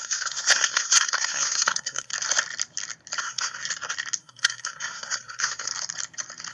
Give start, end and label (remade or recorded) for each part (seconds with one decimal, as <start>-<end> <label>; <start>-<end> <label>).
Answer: 0.0-2.1 remade; 2.1-3.2 recorded; 3.2-3.6 remade; 3.6-4.2 recorded; 4.2-5.7 remade; 5.7-6.5 recorded